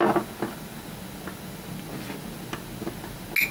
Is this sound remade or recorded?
recorded